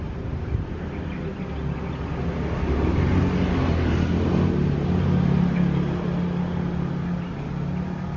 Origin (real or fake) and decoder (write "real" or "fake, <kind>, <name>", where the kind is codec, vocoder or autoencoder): real